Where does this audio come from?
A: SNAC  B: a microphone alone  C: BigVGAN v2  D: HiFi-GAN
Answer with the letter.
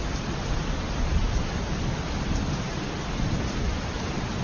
B